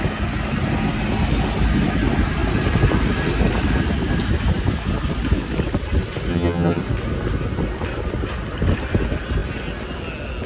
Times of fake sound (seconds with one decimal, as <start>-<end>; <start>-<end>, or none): 6.3-6.8